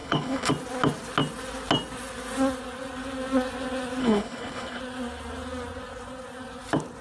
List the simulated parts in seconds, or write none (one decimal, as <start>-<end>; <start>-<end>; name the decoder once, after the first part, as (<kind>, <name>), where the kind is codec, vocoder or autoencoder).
0.0-0.5 (codec, HILCodec); 4.0-4.8